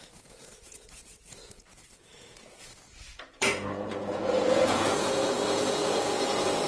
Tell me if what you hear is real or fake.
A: fake